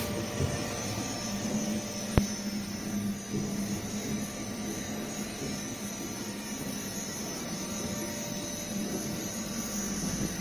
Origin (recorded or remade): recorded